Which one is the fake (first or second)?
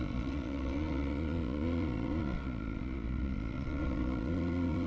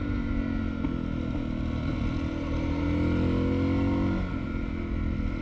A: first